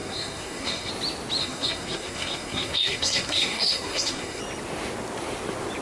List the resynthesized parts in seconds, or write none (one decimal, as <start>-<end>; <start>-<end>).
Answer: 0.0-0.9; 1.4-4.4